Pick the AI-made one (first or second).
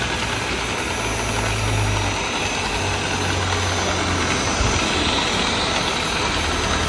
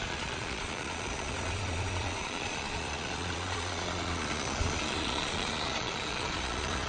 second